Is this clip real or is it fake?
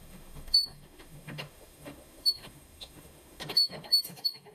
fake